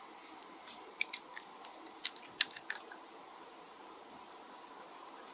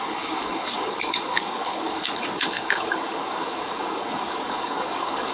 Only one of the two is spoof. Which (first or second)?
second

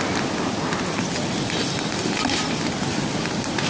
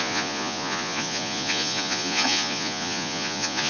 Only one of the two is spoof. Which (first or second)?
second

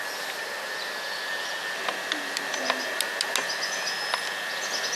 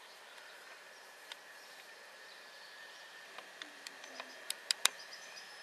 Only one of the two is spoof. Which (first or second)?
second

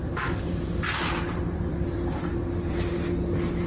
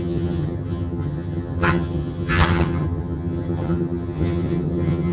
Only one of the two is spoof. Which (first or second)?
second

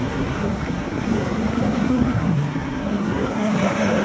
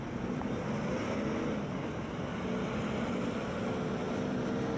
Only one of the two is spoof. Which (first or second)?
first